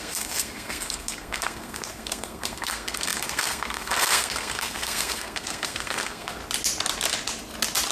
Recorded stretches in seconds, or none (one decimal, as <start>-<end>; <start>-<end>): 6.4-7.9